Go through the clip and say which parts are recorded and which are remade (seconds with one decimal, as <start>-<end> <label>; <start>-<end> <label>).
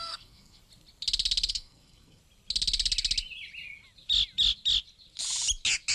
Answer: 0.0-0.6 remade; 0.6-1.5 recorded; 1.5-2.2 remade; 2.2-5.9 recorded